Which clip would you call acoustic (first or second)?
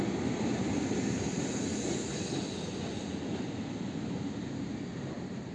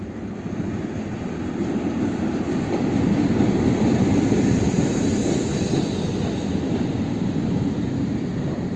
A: first